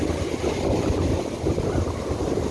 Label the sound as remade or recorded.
recorded